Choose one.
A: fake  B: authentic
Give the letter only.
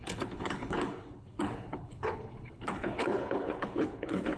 A